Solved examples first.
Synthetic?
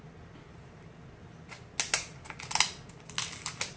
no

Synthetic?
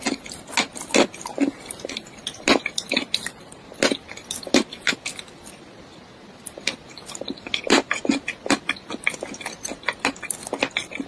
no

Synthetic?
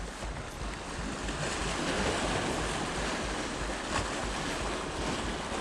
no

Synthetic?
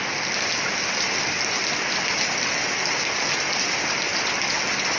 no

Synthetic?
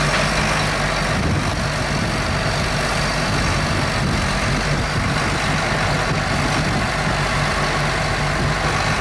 no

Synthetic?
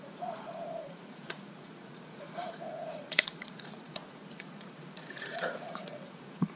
yes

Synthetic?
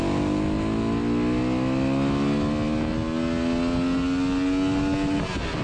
no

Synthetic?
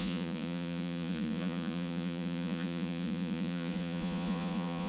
yes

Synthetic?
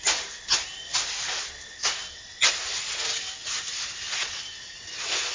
no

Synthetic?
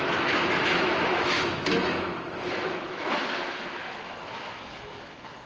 yes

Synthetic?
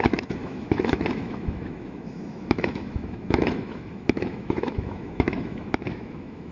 yes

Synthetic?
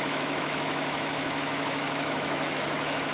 yes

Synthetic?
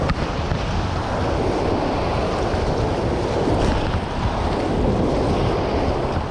no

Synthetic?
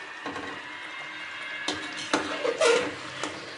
no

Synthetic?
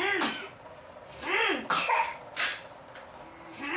yes